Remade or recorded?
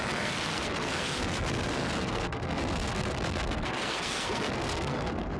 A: remade